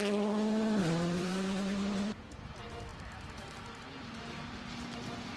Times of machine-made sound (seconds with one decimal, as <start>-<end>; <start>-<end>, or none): 0.8-1.5; 2.9-3.8